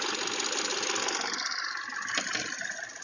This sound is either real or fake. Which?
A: real